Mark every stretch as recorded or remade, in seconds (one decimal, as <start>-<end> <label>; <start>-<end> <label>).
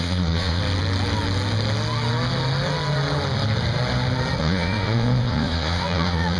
0.0-0.6 remade; 0.6-4.4 recorded; 4.4-6.4 remade